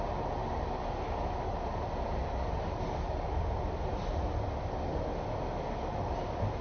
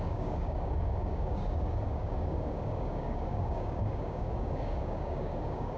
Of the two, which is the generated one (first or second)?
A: second